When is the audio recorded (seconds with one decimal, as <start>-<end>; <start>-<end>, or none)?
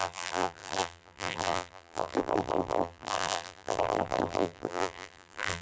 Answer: none